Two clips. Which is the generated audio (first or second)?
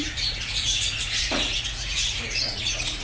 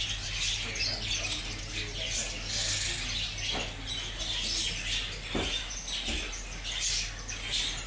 first